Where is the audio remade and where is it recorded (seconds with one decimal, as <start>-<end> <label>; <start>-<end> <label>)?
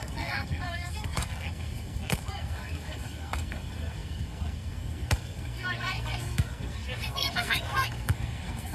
0.0-8.7 remade